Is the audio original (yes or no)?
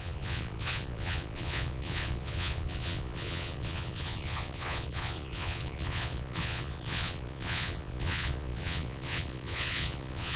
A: no